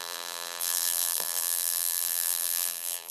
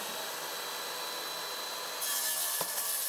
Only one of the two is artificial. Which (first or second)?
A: first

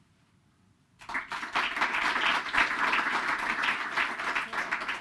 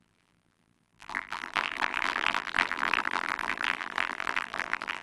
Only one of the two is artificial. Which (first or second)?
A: second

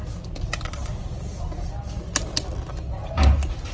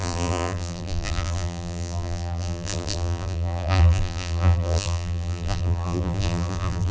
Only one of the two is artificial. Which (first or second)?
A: second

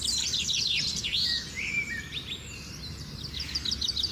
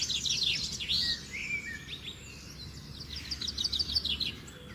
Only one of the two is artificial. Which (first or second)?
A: first